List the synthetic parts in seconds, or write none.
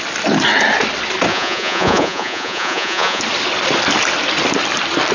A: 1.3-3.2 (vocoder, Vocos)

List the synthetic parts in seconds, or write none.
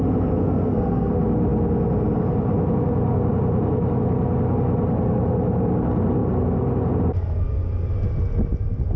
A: 0.4-1.1 (codec, SNAC)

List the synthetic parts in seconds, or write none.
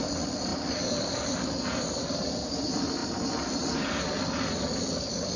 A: none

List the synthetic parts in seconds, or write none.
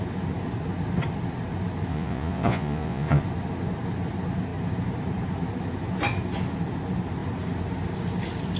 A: 1.9-3.2 (vocoder, Vocos)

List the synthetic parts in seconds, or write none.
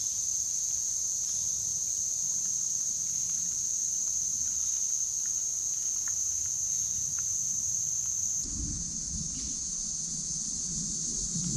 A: none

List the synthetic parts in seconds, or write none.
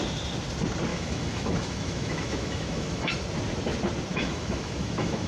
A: 0.9-3.1 (autoencoder, DAC-VAE); 4.1-5.3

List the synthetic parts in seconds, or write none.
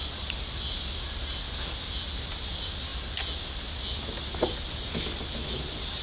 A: none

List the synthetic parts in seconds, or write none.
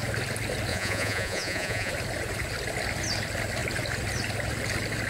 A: 0.7-1.9 (vocoder, Vocos)